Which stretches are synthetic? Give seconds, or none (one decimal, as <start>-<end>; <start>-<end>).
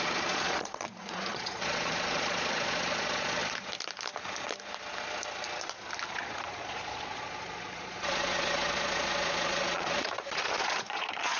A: 0.0-3.4; 6.1-11.4